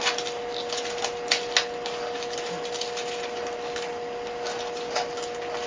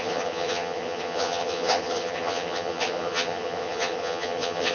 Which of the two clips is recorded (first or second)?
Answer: first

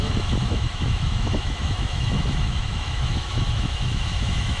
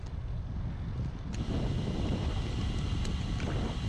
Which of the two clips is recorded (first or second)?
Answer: second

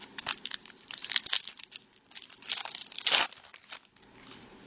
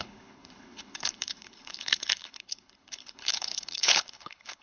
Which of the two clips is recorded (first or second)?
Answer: first